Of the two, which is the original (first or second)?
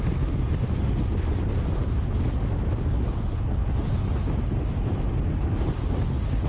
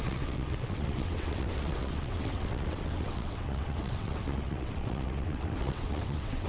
first